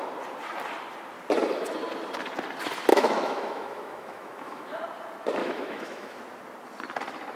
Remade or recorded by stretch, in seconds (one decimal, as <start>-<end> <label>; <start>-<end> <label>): 0.0-2.9 recorded; 2.9-4.8 remade; 4.8-5.4 recorded; 5.4-6.2 remade; 6.2-7.4 recorded